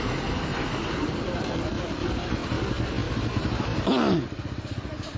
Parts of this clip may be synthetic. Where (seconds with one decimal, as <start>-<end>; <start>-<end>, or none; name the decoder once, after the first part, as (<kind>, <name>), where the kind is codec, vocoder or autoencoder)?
0.5-2.3 (vocoder, BigVGAN v2)